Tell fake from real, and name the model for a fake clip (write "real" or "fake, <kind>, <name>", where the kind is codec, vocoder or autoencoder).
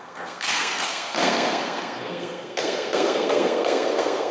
fake, codec, SNAC